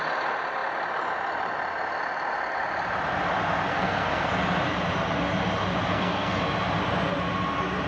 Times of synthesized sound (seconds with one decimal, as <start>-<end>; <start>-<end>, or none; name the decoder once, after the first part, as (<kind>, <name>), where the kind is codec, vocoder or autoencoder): 3.7-4.3 (codec, SNAC); 5.9-6.4